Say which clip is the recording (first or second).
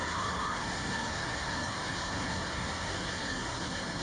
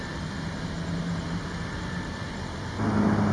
second